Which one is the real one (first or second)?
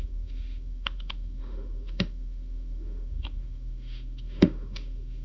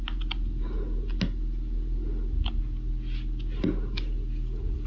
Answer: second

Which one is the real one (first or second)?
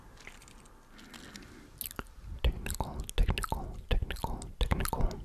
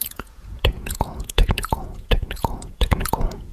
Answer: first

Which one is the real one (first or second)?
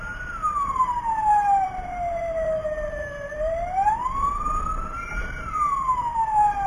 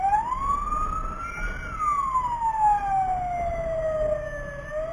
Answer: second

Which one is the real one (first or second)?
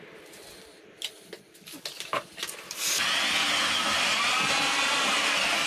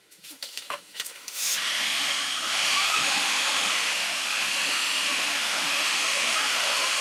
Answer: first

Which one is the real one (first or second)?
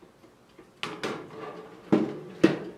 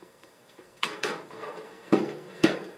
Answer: first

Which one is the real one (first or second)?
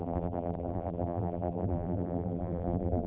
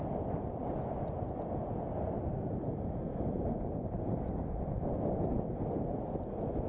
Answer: second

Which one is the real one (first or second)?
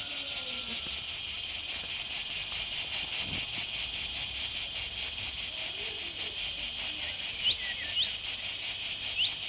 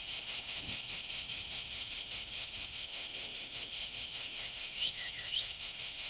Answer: first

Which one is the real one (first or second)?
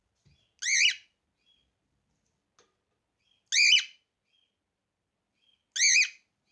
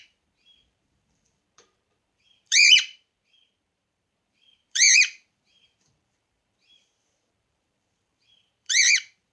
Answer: first